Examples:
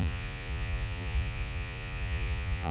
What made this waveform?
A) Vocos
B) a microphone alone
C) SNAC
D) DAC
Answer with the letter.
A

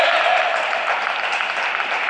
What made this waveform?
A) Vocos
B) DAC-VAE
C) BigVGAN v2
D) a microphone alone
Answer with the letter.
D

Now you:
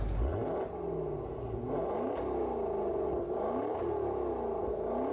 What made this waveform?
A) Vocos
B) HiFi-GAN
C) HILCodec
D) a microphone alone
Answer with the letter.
D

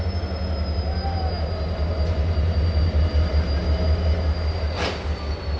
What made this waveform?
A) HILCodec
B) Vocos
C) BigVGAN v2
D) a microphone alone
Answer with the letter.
D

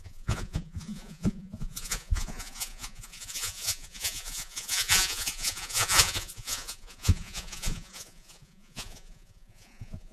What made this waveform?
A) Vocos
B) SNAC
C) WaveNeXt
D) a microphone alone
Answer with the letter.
A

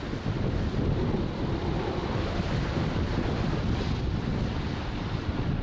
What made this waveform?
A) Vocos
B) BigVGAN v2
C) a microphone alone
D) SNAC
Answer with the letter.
C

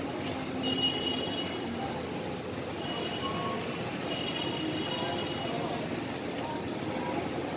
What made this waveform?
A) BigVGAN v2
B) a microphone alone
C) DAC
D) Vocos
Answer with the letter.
B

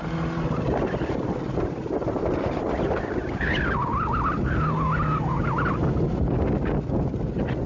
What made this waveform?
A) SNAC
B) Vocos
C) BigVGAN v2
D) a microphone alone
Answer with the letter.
D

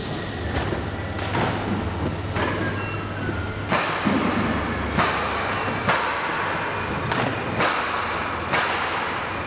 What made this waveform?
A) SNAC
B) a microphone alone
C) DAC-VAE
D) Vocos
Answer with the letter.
B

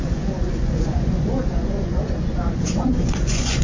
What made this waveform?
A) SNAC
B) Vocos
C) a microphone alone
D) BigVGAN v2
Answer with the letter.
B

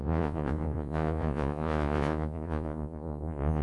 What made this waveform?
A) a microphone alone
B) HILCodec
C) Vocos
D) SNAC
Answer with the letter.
C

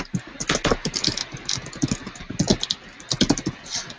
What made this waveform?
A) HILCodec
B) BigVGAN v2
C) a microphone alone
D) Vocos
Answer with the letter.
C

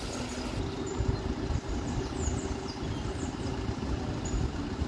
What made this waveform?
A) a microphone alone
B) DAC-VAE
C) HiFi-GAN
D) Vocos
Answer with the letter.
A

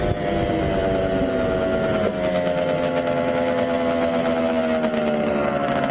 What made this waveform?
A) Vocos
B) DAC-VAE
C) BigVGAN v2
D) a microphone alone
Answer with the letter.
D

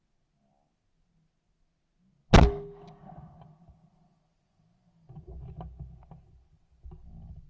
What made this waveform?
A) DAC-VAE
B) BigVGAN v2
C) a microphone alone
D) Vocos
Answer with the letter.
C